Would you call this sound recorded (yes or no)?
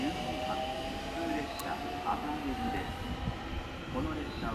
yes